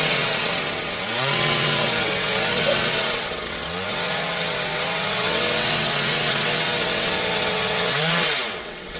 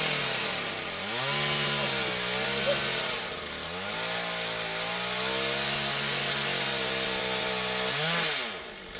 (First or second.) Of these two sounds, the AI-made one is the first